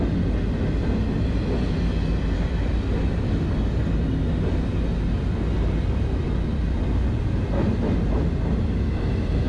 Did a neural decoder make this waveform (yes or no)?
no